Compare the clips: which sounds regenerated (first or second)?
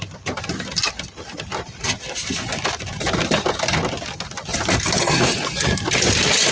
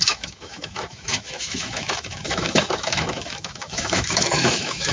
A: second